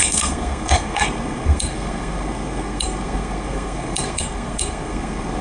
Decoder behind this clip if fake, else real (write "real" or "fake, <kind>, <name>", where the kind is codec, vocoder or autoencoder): fake, codec, SNAC